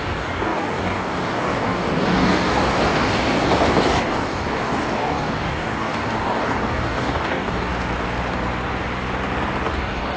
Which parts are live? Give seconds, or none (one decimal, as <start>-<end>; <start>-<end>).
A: 7.7-9.7